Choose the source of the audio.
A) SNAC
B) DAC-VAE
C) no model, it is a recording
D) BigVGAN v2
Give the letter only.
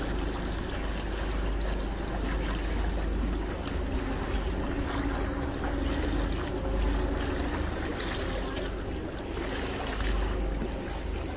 C